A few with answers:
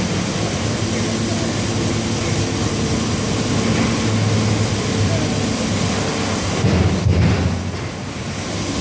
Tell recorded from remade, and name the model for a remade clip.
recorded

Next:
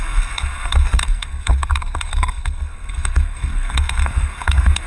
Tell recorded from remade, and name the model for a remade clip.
remade, codec, SNAC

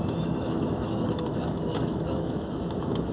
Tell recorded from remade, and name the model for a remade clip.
remade, autoencoder, DAC-VAE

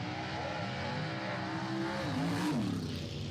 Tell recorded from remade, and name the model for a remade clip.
recorded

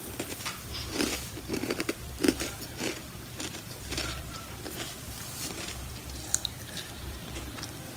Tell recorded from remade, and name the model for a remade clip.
remade, vocoder, BigVGAN v2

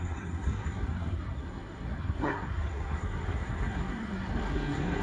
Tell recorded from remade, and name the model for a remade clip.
remade, codec, SNAC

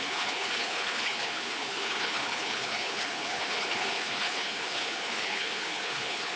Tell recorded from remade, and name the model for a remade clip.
remade, codec, HILCodec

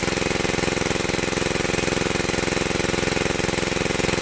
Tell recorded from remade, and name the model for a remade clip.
recorded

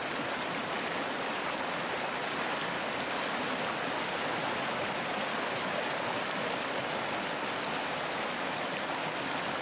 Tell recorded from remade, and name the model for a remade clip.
recorded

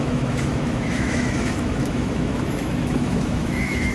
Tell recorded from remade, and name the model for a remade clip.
remade, autoencoder, DAC-VAE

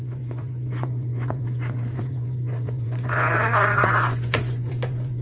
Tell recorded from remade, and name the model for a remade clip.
remade, vocoder, Vocos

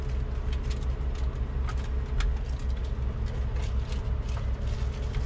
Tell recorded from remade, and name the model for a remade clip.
recorded